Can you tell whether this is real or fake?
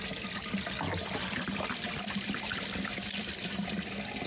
real